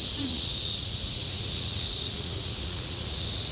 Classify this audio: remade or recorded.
remade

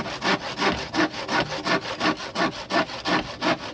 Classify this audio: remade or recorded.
recorded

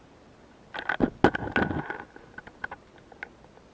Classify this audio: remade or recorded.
recorded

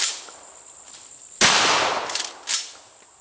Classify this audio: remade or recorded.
recorded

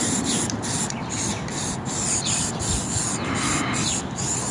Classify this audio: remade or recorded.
recorded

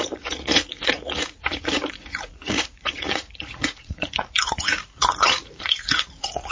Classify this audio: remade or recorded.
remade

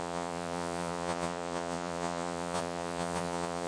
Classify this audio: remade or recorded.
remade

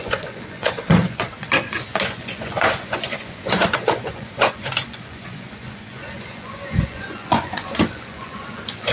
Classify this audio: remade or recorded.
remade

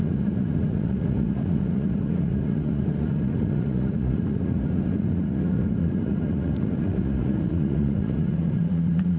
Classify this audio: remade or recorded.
remade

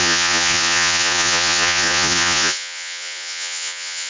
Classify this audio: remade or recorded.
remade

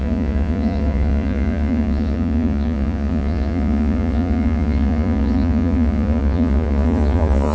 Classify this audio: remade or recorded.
remade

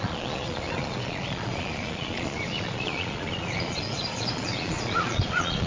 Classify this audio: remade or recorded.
remade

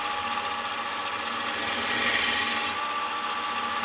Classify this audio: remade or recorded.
recorded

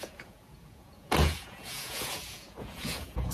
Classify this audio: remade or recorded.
remade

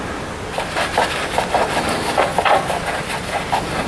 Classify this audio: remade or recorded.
recorded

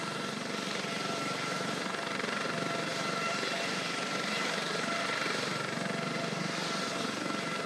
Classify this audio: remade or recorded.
recorded